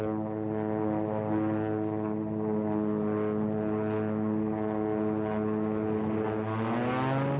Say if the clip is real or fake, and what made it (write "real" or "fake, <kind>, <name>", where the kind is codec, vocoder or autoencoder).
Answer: real